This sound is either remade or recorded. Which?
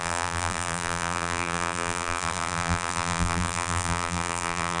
remade